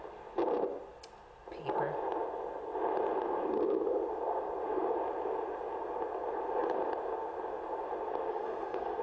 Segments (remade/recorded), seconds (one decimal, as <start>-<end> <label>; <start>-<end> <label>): 0.0-8.3 recorded; 8.3-9.0 remade